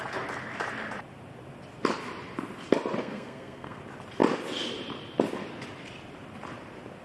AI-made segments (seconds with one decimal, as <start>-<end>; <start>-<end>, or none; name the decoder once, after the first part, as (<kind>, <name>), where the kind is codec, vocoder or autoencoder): 3.0-3.8 (codec, SNAC)